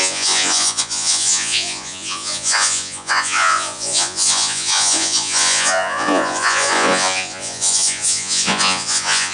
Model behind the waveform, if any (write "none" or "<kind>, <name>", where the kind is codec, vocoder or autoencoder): vocoder, Vocos